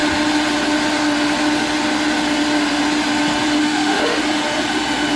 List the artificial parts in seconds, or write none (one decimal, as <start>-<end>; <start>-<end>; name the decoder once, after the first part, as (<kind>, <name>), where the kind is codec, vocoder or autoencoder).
3.6-4.2 (autoencoder, DAC-VAE)